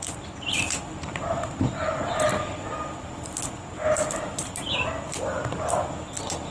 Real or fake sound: real